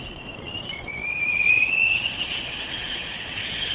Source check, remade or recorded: remade